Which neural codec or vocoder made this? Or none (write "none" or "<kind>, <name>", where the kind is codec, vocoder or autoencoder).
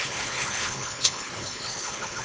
codec, HILCodec